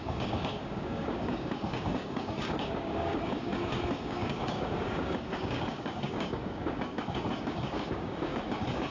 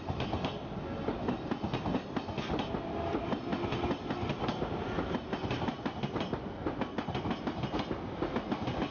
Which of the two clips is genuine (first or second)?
second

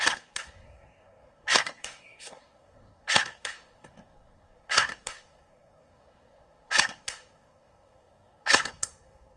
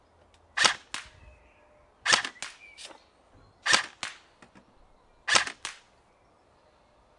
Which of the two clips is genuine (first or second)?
second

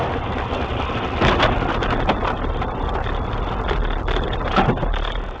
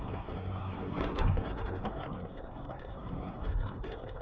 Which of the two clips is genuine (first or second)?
first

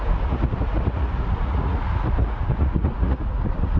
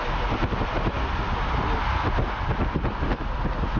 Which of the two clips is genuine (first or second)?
second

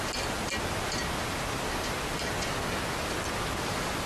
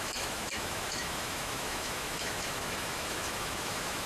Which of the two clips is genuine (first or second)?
first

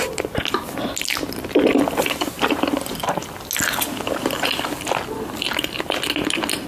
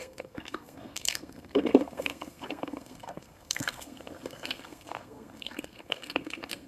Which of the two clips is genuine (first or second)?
first